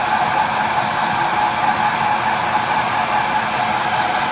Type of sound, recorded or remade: recorded